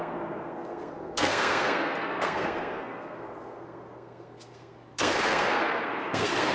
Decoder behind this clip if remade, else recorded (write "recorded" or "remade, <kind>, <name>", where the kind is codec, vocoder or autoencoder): remade, codec, SNAC